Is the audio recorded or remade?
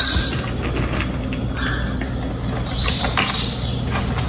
recorded